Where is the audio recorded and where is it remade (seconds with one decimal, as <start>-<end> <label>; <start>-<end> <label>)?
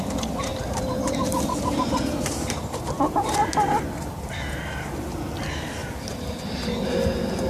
0.0-0.5 recorded; 0.5-4.6 remade; 4.6-5.8 recorded; 5.8-6.6 remade; 6.6-7.5 recorded